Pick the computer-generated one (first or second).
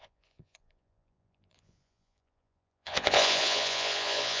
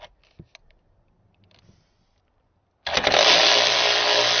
first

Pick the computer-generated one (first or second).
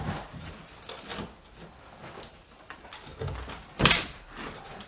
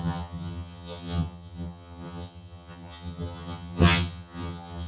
second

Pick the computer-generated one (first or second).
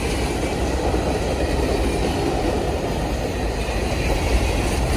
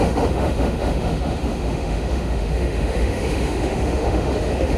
second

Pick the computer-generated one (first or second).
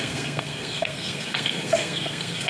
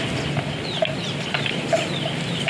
first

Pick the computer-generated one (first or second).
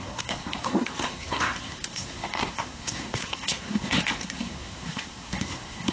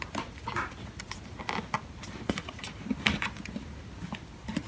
first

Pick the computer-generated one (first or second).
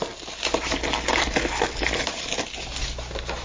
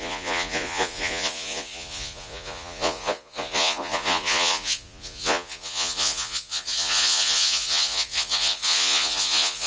second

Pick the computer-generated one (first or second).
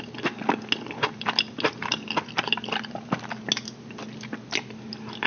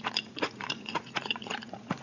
second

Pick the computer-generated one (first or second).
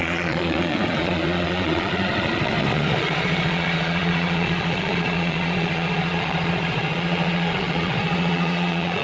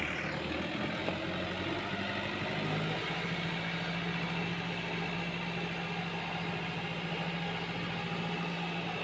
first